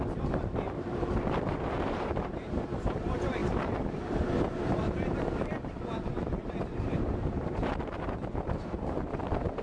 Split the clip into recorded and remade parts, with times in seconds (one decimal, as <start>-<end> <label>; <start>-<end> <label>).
0.0-9.6 remade